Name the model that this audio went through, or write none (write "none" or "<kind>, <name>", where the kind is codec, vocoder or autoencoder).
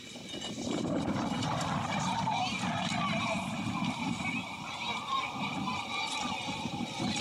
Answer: none